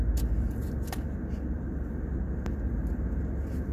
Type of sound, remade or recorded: recorded